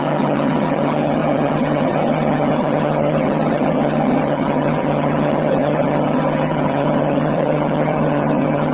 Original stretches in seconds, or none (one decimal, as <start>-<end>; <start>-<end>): none

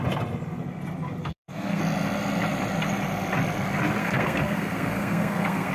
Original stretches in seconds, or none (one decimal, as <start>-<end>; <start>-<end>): 0.0-1.2; 1.8-4.0

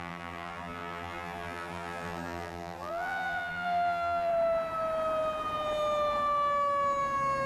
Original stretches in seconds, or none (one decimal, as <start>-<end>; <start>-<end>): 4.3-7.5

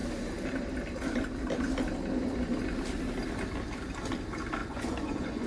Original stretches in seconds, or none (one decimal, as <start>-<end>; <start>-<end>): 0.0-4.6

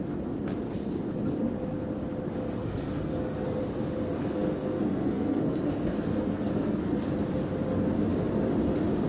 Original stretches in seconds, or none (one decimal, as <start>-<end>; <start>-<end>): 0.0-2.6; 3.6-4.2; 7.1-9.1